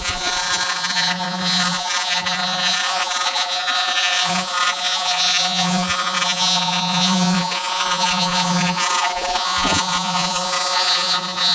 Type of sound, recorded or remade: remade